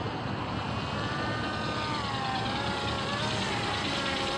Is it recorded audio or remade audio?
remade